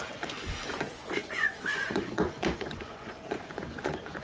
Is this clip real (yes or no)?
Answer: no